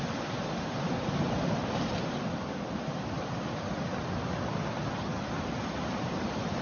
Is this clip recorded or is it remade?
recorded